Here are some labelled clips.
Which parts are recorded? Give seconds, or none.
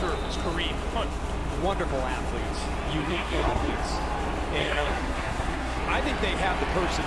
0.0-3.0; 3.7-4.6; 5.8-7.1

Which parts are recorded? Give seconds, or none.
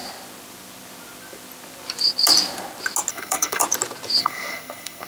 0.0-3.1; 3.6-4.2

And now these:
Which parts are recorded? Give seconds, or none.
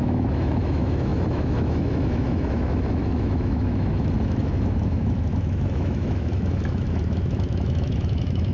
none